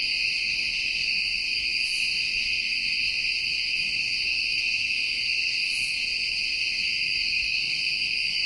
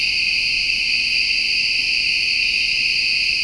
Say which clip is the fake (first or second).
first